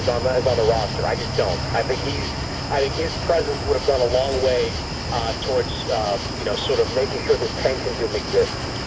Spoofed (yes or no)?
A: no